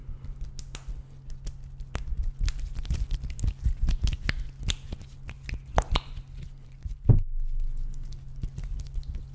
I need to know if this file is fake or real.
real